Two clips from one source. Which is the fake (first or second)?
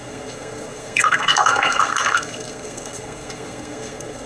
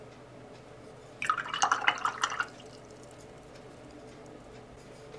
first